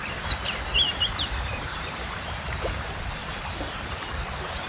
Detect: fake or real fake